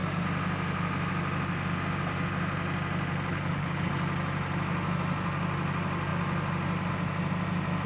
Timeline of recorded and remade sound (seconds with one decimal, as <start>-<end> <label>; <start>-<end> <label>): 0.0-3.3 recorded; 3.3-3.9 remade; 3.9-7.9 recorded